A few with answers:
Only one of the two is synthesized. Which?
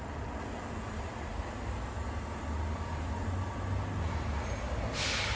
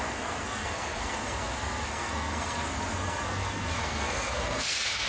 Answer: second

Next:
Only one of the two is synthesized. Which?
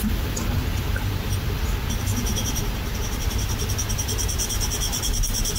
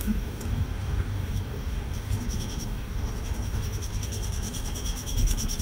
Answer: second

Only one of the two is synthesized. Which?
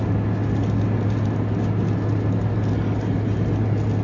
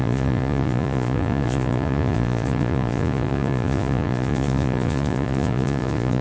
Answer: second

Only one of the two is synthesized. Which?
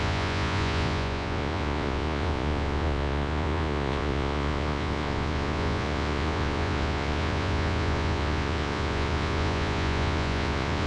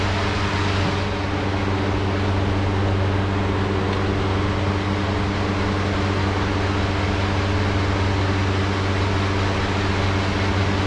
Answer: first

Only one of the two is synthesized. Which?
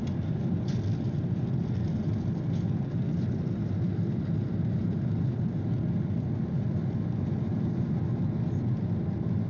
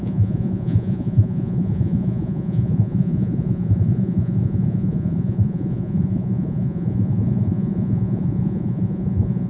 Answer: second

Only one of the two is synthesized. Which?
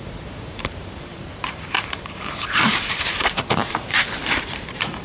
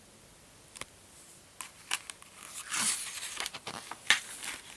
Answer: first